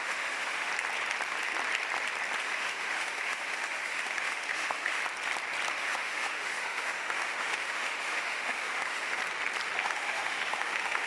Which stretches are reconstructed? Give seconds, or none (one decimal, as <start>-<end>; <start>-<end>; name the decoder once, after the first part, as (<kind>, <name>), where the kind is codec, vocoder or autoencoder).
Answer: 0.0-0.7 (autoencoder, DAC-VAE); 2.4-5.0; 5.7-9.2; 9.8-11.1